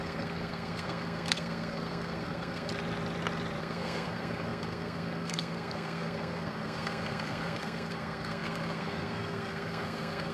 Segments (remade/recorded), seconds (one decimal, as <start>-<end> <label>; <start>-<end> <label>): 0.0-2.7 remade; 2.7-3.6 recorded; 3.6-10.3 remade